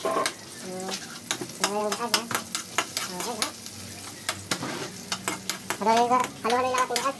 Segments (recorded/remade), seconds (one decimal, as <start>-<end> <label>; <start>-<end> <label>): 0.0-7.2 recorded